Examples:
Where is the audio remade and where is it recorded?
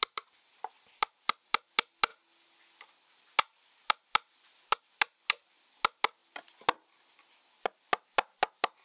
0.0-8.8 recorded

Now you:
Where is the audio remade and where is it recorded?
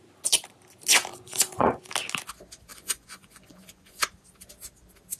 0.0-1.1 recorded; 1.1-1.9 remade; 1.9-2.7 recorded; 2.7-4.0 remade; 4.0-5.2 recorded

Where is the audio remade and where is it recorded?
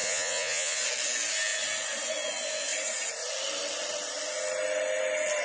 0.0-0.8 remade; 0.8-5.4 recorded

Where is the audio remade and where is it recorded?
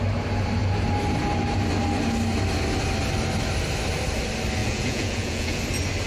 0.0-4.6 recorded; 4.6-5.6 remade; 5.6-6.1 recorded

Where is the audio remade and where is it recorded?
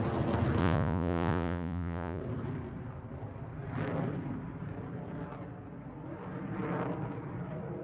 0.0-0.6 recorded; 0.6-2.2 remade; 2.2-7.8 recorded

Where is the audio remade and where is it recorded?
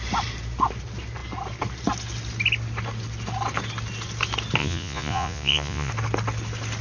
0.0-4.6 recorded; 4.6-5.9 remade; 5.9-6.8 recorded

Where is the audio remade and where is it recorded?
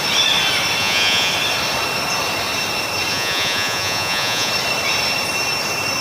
0.0-0.8 recorded; 0.8-1.3 remade; 1.3-3.1 recorded; 3.1-4.5 remade; 4.5-6.0 recorded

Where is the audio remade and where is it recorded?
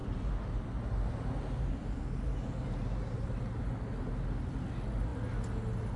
0.0-6.0 recorded